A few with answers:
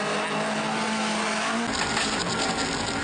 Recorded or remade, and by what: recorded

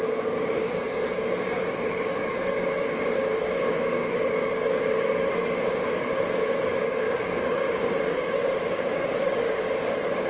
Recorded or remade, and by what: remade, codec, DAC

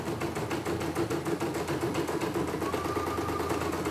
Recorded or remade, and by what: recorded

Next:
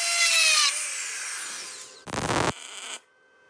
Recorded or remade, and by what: recorded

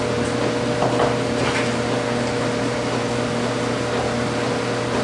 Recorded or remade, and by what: recorded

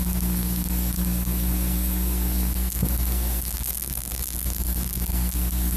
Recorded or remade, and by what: remade, codec, SNAC